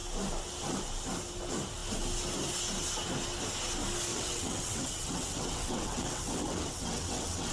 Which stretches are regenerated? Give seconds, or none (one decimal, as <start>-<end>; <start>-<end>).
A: 4.1-7.5